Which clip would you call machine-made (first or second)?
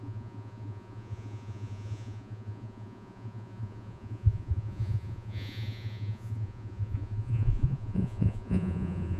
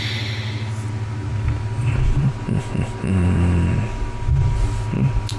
first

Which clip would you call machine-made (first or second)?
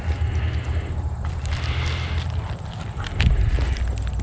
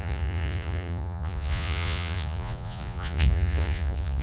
second